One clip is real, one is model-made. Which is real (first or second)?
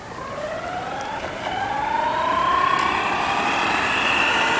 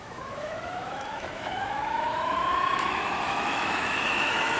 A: first